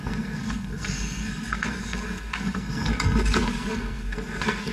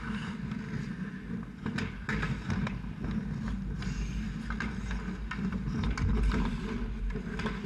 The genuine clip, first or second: second